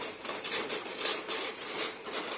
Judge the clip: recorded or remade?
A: remade